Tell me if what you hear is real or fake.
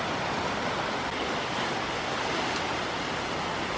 real